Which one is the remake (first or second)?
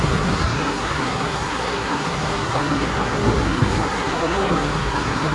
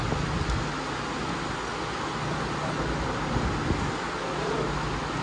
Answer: first